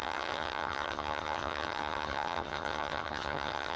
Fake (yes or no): yes